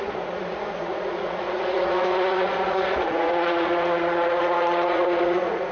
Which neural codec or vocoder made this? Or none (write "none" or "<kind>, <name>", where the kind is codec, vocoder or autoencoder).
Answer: vocoder, Vocos